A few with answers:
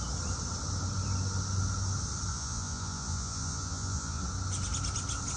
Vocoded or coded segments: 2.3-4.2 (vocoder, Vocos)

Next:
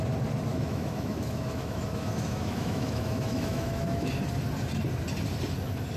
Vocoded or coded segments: 0.5-4.1 (autoencoder, DAC-VAE)

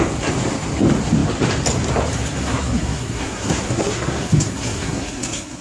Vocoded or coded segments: 2.4-5.6 (codec, SNAC)

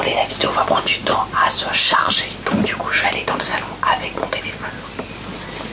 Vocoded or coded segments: 1.0-2.6 (vocoder, BigVGAN v2); 3.5-4.4

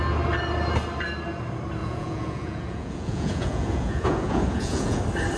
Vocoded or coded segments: 1.8-5.0 (vocoder, Vocos)